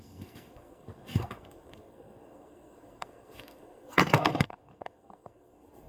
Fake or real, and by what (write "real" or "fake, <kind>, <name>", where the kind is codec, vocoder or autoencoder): fake, codec, SNAC